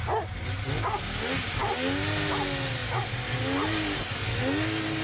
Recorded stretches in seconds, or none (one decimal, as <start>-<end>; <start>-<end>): 0.0-5.0